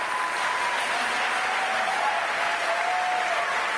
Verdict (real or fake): real